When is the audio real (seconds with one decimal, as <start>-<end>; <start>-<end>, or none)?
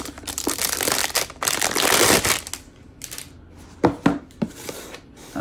0.0-5.4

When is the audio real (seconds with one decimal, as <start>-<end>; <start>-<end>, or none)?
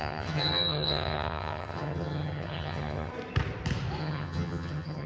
3.1-4.0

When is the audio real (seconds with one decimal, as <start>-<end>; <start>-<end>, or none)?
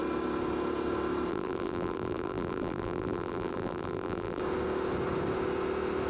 0.0-1.3; 4.4-6.1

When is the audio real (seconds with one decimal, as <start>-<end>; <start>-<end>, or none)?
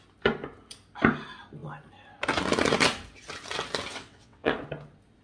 0.0-3.9; 4.5-5.2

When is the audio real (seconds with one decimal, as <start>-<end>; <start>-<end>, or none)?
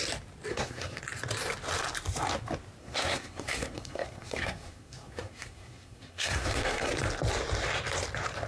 0.0-0.5; 1.0-2.8; 6.9-8.5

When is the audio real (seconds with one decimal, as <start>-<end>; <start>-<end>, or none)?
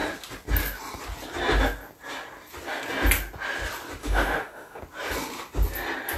0.0-4.0; 4.8-6.2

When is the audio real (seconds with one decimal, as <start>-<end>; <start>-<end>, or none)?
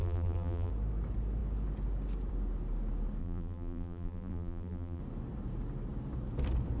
0.7-3.2; 5.0-6.8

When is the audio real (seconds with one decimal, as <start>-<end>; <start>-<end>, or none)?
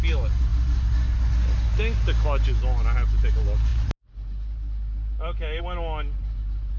0.0-6.8